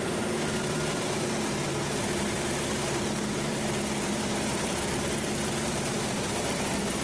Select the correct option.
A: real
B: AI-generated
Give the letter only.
B